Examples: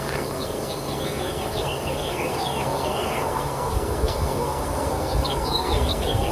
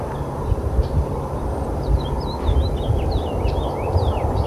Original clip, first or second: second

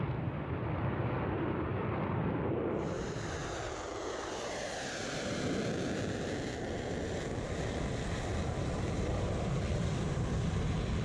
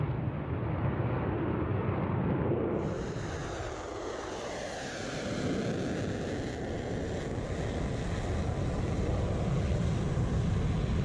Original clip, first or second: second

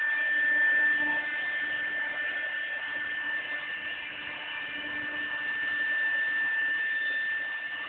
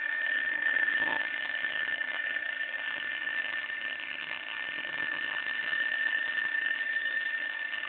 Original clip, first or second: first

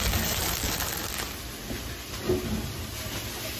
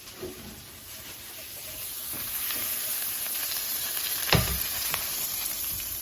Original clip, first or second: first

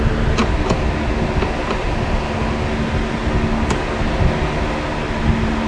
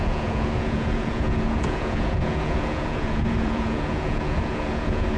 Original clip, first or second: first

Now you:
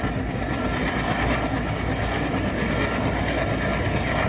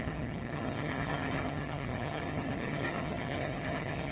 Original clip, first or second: first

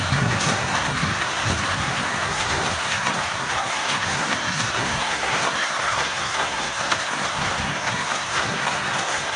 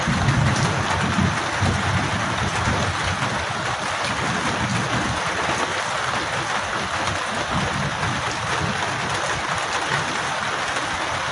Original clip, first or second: second